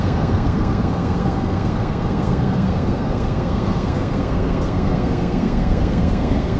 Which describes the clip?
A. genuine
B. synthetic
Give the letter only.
B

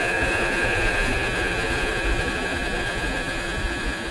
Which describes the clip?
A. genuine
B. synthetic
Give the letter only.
B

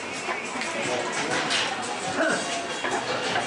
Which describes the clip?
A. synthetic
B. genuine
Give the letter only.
B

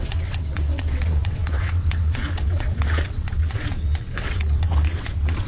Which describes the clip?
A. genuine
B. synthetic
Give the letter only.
B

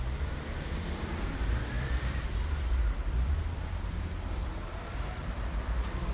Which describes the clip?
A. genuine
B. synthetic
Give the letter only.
B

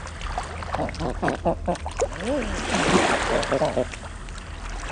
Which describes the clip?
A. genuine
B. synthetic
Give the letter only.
A